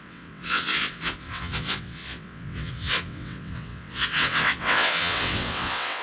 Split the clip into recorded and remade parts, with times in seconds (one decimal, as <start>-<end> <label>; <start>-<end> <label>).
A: 0.0-6.0 remade